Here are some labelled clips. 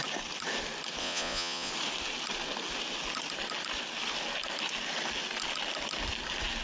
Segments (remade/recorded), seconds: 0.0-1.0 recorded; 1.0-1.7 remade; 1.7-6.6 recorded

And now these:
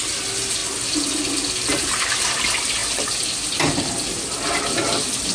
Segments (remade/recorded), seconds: 0.0-5.3 recorded

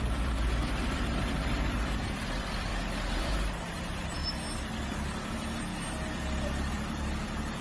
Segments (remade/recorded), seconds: 0.0-2.7 remade; 2.7-3.2 recorded; 3.2-4.2 remade; 4.2-4.8 recorded; 4.8-5.7 remade; 5.7-6.7 recorded; 6.7-7.6 remade

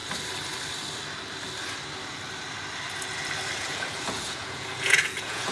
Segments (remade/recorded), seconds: 0.0-3.6 recorded; 3.6-5.5 remade

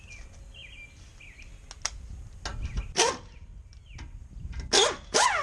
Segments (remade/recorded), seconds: 0.0-5.4 recorded

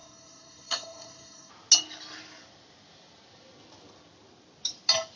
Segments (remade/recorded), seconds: 0.0-1.5 remade; 1.5-5.2 recorded

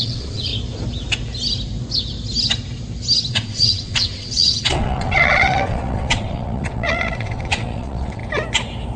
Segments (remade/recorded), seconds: 0.0-0.5 remade; 0.5-3.3 recorded; 3.3-8.2 remade; 8.2-9.0 recorded

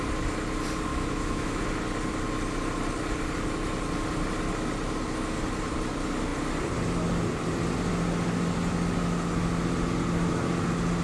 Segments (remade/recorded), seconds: 0.0-0.9 recorded; 0.9-1.6 remade; 1.6-11.0 recorded